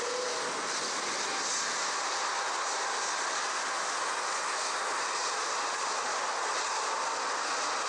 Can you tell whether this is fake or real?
real